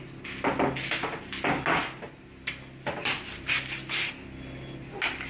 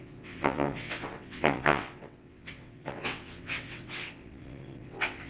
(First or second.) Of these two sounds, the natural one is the first